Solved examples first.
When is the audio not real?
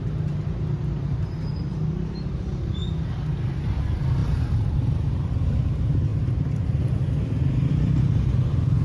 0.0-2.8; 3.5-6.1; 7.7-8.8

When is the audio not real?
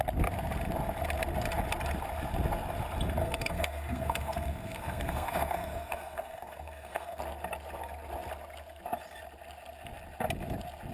3.2-7.2